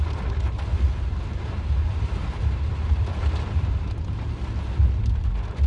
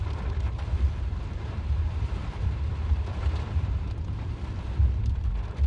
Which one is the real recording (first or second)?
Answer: first